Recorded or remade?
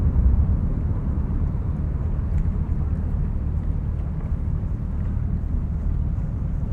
remade